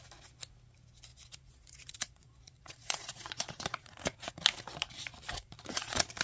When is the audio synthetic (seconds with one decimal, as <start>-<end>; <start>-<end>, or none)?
1.1-4.3; 5.3-6.2